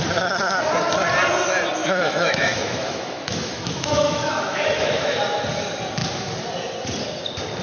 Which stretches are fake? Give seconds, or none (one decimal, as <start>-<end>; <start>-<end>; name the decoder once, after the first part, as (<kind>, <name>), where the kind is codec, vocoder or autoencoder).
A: 1.8-5.2 (autoencoder, DAC-VAE)